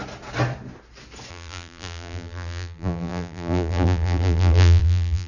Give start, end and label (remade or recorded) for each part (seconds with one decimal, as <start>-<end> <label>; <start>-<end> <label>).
0.0-1.3 recorded; 1.3-5.3 remade

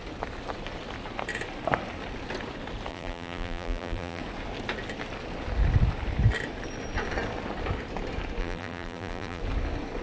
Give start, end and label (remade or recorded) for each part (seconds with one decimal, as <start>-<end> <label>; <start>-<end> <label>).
0.0-2.9 recorded; 2.9-4.2 remade; 4.2-8.4 recorded; 8.4-9.4 remade; 9.4-10.0 recorded

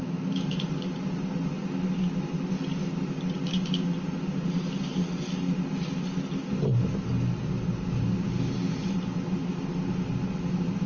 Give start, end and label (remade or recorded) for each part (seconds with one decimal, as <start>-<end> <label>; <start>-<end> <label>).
0.0-10.9 recorded

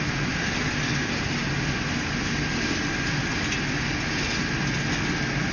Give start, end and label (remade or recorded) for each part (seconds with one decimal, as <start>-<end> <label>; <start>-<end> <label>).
0.0-5.5 recorded

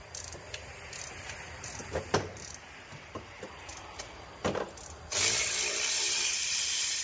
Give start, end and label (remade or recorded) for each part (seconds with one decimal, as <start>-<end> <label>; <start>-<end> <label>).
0.0-3.7 remade; 3.7-5.9 recorded; 5.9-7.0 remade

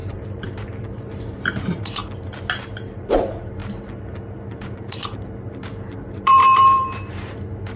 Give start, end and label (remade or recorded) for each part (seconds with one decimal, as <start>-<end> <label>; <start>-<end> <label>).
0.0-2.0 remade; 2.0-2.8 recorded; 2.8-3.6 remade; 3.6-4.5 recorded; 4.5-7.8 remade

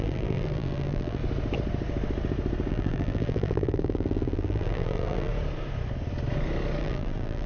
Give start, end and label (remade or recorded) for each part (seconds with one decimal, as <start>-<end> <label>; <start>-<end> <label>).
0.0-1.2 remade; 1.2-2.7 recorded; 2.7-5.3 remade; 5.3-6.8 recorded; 6.8-7.5 remade